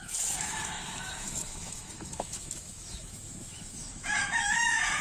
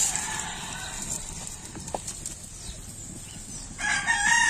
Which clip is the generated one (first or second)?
first